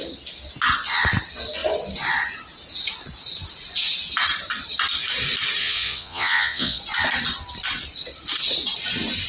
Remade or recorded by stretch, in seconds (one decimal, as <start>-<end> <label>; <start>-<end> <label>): 0.0-5.6 recorded; 5.6-6.8 remade; 6.8-9.3 recorded